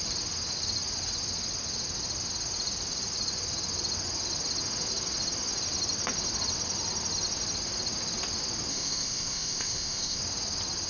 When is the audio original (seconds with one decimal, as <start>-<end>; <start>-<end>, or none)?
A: 0.0-8.7; 10.2-10.9